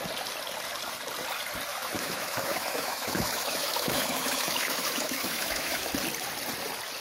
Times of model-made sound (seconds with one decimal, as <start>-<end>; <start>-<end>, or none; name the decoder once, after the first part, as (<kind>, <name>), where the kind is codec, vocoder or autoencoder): 1.7-5.9 (autoencoder, DAC-VAE)